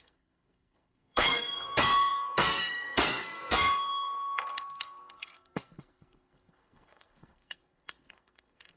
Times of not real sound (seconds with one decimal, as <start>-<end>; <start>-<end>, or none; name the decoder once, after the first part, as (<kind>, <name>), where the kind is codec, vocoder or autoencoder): 0.0-8.8 (codec, SNAC)